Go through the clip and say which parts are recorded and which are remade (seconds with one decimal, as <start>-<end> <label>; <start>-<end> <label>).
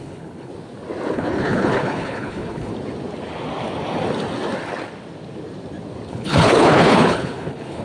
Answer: 0.0-0.5 remade; 0.5-1.1 recorded; 1.1-2.7 remade; 2.7-6.1 recorded; 6.1-7.8 remade